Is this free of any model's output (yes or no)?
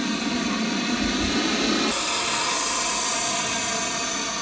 yes